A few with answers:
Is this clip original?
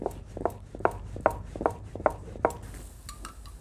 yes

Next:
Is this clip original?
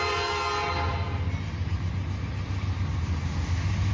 yes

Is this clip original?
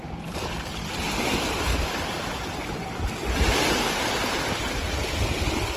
yes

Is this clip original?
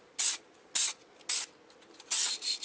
yes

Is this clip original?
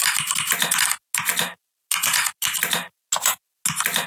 yes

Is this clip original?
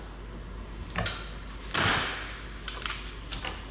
yes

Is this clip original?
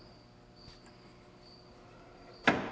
yes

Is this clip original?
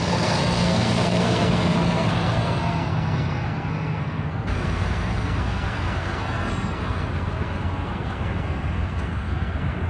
no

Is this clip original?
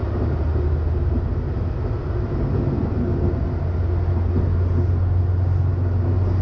yes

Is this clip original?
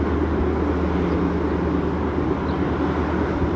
yes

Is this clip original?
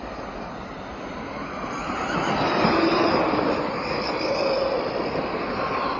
yes